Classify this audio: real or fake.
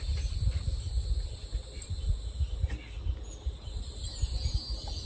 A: real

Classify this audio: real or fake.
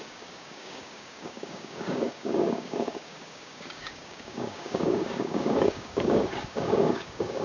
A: fake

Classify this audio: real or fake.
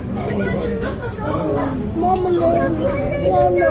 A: fake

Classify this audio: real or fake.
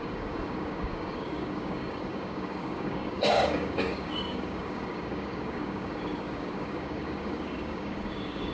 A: fake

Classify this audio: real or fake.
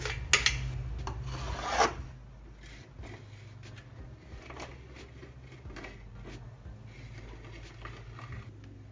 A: real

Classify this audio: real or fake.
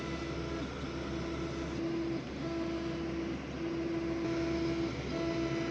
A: real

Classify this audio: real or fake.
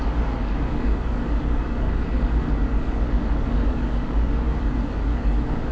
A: fake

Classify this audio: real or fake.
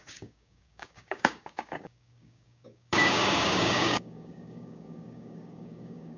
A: fake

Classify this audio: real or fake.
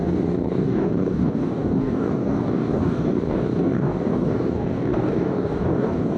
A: fake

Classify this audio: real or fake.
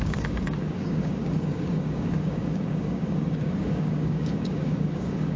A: fake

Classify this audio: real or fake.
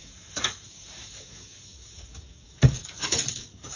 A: fake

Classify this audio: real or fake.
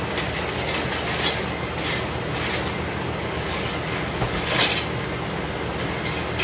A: real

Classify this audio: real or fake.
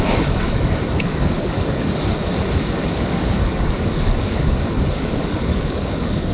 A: fake